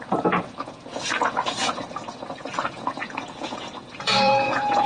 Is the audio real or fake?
fake